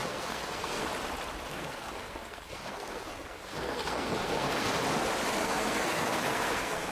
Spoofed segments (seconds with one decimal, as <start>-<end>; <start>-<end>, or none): 0.0-0.9; 1.5-4.7; 5.4-6.9